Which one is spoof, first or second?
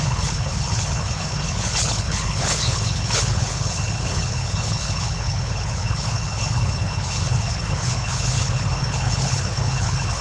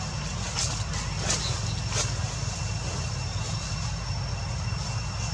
first